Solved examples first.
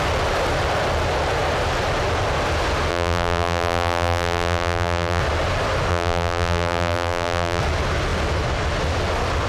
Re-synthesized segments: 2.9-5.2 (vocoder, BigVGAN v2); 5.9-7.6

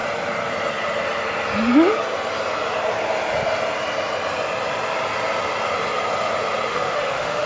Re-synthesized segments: 6.7-7.5 (autoencoder, DAC-VAE)

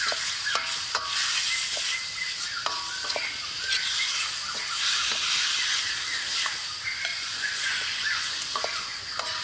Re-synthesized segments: 7.1-9.4 (vocoder, Vocos)

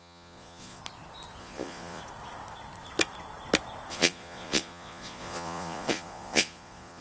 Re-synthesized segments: 0.0-0.8 (vocoder, Vocos); 1.4-2.0; 3.9-7.0